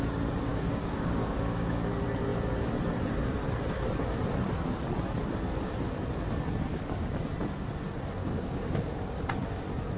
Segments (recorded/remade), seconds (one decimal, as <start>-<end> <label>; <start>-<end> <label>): 0.0-0.5 recorded; 0.5-1.9 remade; 1.9-6.7 recorded; 6.7-7.2 remade; 7.2-8.2 recorded; 8.2-9.3 remade; 9.3-10.0 recorded